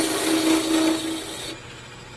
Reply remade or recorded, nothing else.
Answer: recorded